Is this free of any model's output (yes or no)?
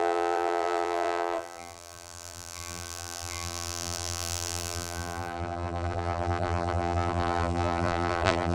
no